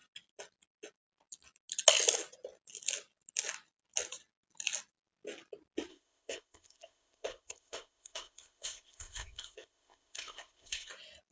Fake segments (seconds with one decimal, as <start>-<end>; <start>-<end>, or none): 5.9-10.9